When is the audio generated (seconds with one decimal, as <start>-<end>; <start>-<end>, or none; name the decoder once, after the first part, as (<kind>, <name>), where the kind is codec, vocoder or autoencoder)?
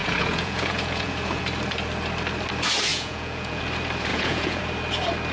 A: 0.0-1.4 (vocoder, Vocos); 2.9-3.6; 4.1-4.6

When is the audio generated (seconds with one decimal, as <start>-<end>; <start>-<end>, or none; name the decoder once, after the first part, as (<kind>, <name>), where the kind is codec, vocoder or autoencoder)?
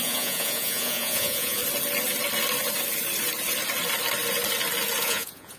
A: 0.0-1.6 (vocoder, Vocos); 5.0-5.6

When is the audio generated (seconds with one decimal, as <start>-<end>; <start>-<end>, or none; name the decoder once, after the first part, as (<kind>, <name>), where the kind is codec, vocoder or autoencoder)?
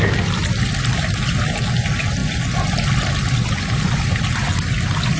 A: none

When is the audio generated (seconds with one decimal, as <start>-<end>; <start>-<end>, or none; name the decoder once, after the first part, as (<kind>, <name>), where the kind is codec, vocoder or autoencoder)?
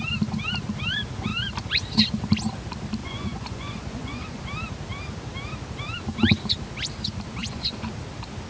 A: 3.0-4.4 (vocoder, Vocos); 7.4-7.9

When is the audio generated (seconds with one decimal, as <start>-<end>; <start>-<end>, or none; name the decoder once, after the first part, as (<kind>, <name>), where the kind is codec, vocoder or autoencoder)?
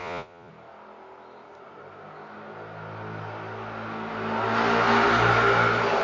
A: 0.0-0.5 (vocoder, Vocos)